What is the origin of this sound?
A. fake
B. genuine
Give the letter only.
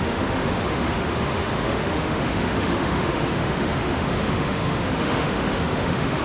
A